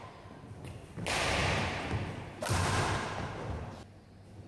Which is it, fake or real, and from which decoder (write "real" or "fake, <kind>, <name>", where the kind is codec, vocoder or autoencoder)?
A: real